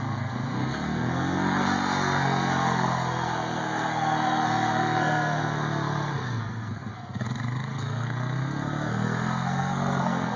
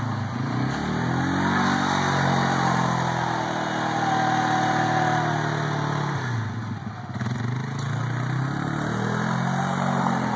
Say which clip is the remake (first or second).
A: first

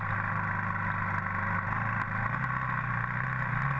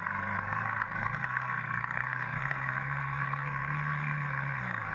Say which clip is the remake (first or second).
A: second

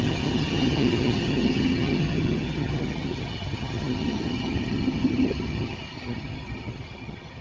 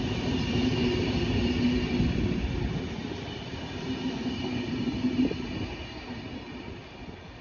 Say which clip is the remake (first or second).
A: first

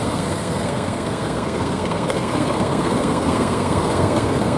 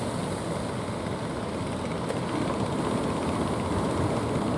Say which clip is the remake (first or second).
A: first